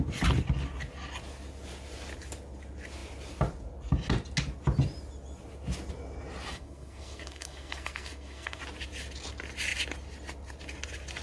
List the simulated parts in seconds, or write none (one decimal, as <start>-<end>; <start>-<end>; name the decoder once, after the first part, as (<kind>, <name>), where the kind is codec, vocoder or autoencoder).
6.5-8.6 (codec, SNAC)